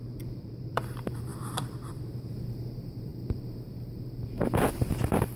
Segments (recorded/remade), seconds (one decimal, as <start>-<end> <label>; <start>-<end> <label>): 0.0-1.3 remade; 1.3-1.9 recorded; 1.9-5.4 remade